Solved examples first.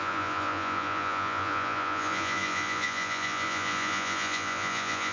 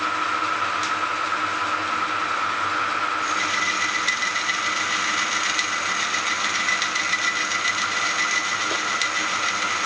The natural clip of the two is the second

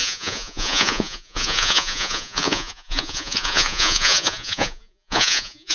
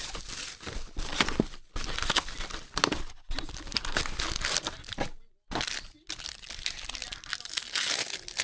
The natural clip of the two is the second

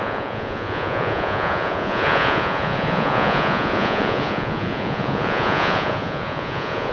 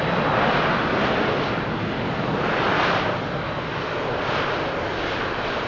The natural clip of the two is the second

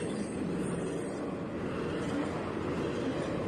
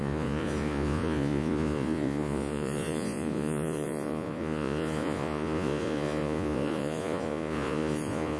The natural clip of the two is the first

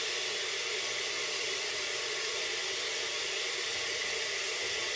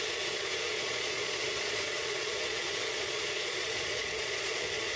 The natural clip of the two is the first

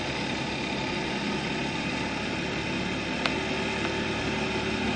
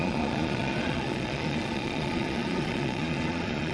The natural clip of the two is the first